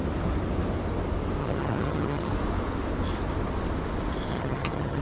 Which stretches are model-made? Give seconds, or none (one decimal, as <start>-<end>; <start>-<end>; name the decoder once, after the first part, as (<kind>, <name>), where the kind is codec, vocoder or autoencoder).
1.4-2.3 (vocoder, HiFi-GAN); 4.3-5.0